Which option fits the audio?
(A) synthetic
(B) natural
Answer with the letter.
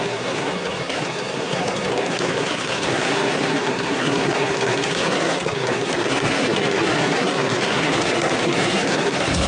A